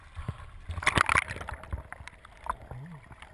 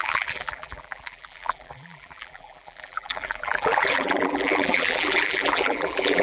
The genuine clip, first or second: first